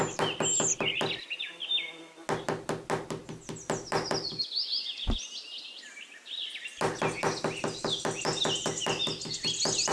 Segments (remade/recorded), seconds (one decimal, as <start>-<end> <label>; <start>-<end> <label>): 0.0-9.9 recorded